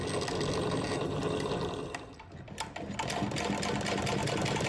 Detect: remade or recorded recorded